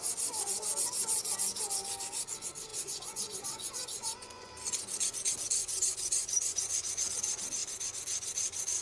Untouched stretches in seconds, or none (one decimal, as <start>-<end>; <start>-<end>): 0.0-2.7; 4.5-5.6; 7.1-8.8

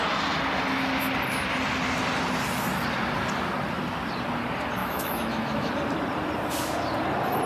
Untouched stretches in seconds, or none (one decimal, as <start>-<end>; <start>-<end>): 0.0-4.8; 5.7-7.5

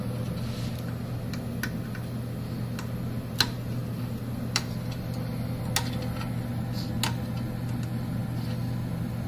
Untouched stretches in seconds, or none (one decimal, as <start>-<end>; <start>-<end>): 0.0-9.3

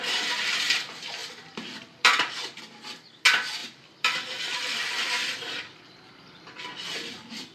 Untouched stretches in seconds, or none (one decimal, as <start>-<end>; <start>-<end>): 0.0-1.2; 2.6-3.6; 4.9-7.5